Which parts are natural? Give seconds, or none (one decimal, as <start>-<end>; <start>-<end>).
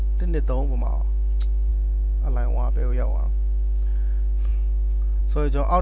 0.0-5.8